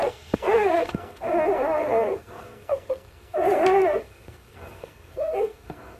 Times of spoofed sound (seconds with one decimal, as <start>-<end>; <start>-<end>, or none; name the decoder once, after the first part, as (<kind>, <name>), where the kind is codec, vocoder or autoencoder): 0.0-6.0 (codec, SNAC)

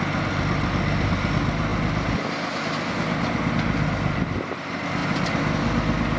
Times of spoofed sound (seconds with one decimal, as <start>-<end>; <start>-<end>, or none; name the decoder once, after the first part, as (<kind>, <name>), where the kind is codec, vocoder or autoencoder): none

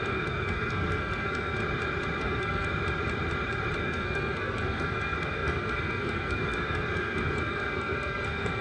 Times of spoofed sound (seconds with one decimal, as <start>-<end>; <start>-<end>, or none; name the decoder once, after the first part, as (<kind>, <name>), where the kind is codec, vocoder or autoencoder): 0.0-1.6 (codec, SNAC); 2.2-2.7; 3.8-8.6

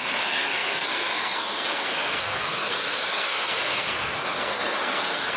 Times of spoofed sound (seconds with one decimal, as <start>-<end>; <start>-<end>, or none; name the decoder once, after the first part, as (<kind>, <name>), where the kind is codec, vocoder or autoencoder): 0.0-5.4 (codec, SNAC)

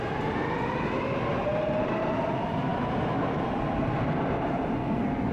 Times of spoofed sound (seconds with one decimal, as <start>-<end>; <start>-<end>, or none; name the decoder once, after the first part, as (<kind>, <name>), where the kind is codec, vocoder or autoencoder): 4.8-5.3 (codec, SNAC)

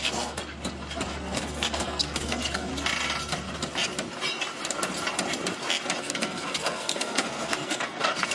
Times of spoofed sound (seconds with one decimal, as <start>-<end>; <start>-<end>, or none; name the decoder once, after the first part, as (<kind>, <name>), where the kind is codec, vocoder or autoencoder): 0.0-0.4 (codec, SNAC); 1.1-2.7; 6.0-8.3

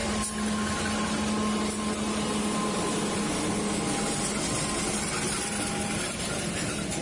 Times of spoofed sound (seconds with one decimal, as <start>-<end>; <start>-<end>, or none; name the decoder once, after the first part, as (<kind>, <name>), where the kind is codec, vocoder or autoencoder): none